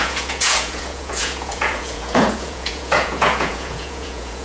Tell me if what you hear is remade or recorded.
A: remade